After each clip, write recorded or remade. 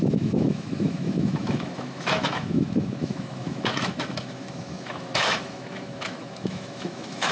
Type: remade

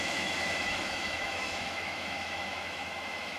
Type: remade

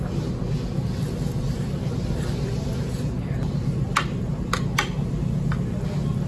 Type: recorded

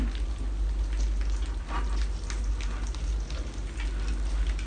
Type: recorded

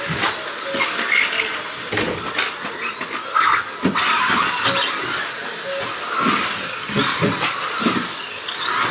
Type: recorded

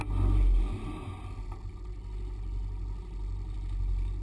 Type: recorded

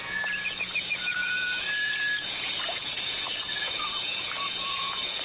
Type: remade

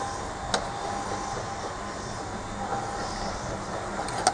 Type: recorded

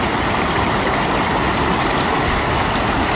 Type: recorded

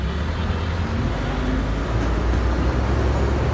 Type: recorded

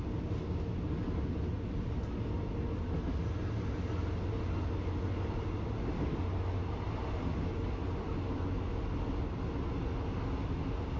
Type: recorded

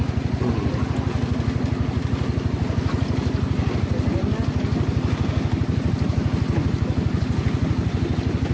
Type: recorded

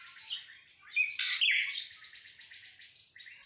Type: recorded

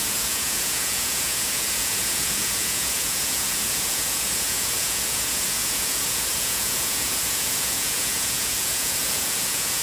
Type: remade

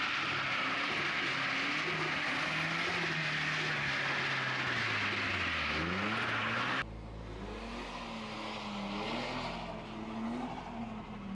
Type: recorded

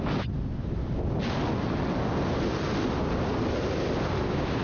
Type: recorded